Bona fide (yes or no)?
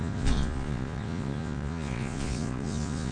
no